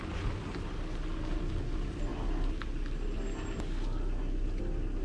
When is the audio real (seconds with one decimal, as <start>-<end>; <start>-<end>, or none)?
0.0-5.0